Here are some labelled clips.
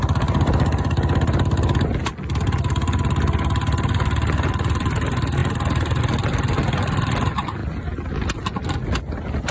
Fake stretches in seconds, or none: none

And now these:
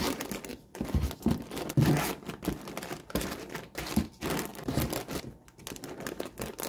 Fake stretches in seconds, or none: none

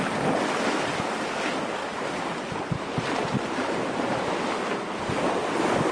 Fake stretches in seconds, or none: 1.8-4.1 (vocoder, BigVGAN v2)

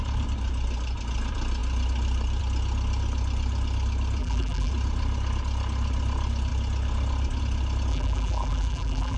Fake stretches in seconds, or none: 4.2-4.7 (vocoder, BigVGAN v2); 7.9-9.2